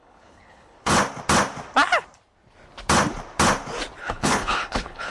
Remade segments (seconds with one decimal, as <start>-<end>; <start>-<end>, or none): 0.0-0.9; 4.0-5.1